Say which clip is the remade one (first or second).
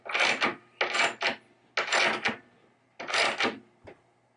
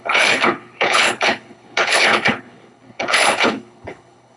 second